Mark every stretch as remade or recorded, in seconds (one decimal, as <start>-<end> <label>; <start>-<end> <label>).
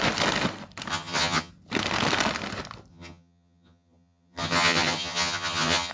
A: 0.0-0.9 recorded; 0.9-1.5 remade; 1.5-2.9 recorded; 2.9-5.9 remade